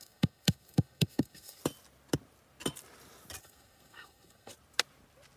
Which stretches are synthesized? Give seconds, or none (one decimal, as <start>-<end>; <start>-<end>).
0.0-1.6; 3.4-4.5